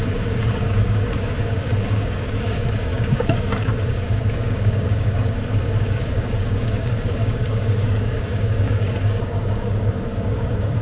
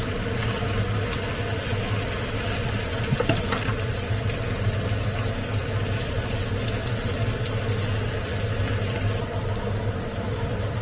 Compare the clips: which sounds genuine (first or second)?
second